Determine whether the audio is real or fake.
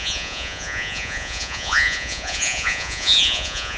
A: fake